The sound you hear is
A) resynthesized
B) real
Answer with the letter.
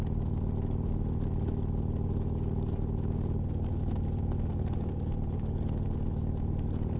B